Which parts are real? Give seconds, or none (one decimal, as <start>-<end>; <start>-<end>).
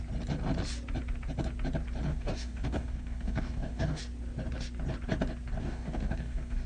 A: 0.0-2.1; 4.0-5.6